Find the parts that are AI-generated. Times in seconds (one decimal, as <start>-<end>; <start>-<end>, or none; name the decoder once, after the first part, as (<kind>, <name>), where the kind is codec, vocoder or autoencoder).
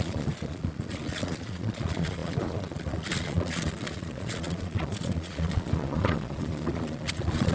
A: 0.0-7.5 (vocoder, Vocos)